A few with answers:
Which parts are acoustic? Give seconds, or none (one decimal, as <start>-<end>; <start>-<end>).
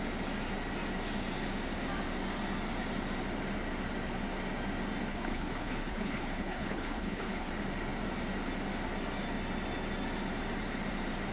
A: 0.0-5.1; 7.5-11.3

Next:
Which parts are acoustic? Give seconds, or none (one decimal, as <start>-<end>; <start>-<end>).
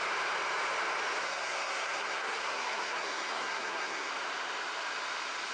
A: 0.0-1.2; 4.1-5.5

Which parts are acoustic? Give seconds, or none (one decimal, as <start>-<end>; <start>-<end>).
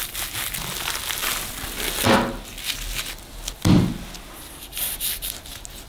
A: 0.0-5.9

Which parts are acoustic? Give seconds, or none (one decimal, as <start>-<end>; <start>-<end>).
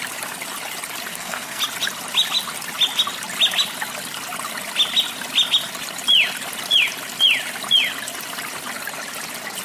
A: 0.0-1.1; 1.6-9.6